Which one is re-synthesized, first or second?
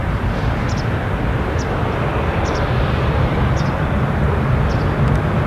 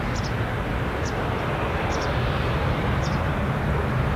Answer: first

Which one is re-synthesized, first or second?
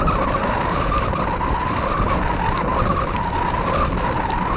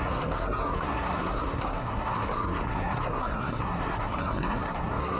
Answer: second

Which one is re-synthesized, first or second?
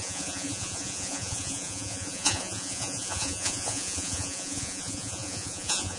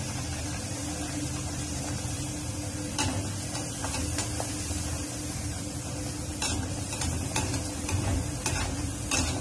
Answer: first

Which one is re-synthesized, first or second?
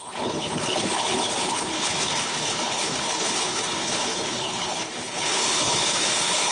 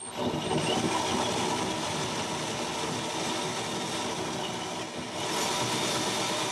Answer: first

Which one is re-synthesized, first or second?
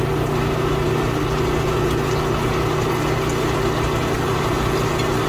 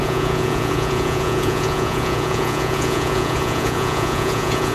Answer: second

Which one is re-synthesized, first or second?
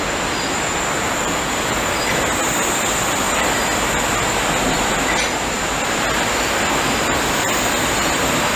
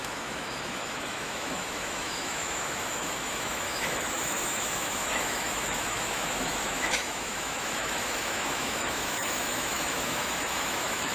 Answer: second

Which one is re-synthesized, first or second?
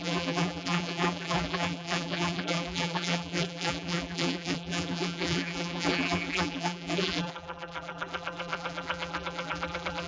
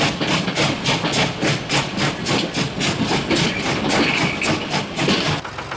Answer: first